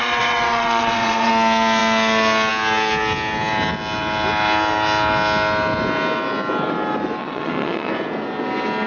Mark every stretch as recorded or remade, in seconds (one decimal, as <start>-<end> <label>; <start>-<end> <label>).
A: 0.0-1.3 remade; 1.3-7.2 recorded; 7.2-7.9 remade; 7.9-8.9 recorded